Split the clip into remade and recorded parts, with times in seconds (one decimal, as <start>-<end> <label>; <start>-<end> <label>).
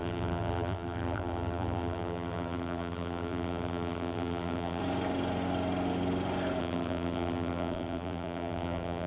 0.0-4.8 remade; 4.8-6.6 recorded; 6.6-9.1 remade